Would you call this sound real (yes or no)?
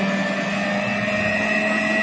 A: yes